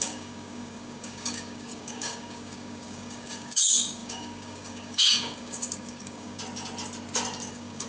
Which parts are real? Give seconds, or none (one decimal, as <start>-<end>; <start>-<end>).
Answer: 6.4-7.5